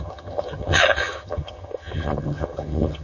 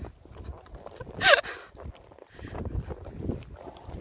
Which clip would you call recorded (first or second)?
second